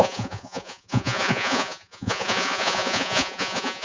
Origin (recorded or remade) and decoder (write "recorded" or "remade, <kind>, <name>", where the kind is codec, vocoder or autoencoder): remade, vocoder, Vocos